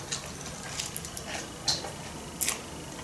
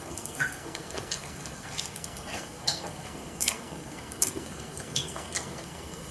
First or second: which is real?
first